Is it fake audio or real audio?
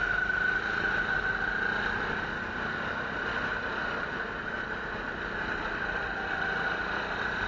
real